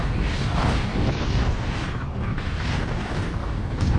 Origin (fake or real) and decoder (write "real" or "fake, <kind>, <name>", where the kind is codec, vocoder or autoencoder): fake, codec, DAC